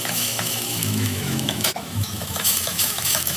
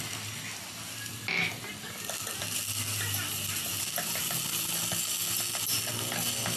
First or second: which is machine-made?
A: first